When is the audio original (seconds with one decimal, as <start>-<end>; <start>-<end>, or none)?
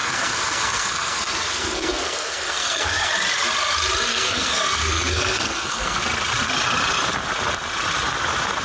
3.1-4.1; 6.0-8.6